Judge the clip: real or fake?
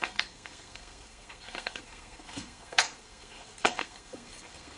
fake